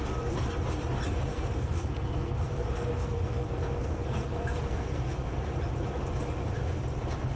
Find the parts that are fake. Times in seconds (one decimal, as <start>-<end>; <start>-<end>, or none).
1.3-5.5